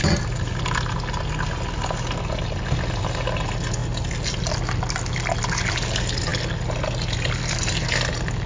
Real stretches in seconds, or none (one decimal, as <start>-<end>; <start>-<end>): 0.0-8.5